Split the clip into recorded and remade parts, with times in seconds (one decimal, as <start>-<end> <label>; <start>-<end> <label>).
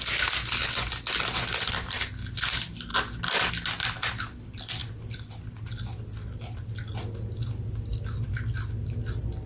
0.0-9.5 recorded